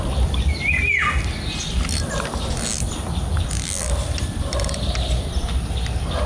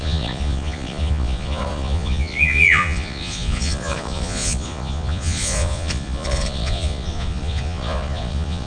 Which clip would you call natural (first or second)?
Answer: first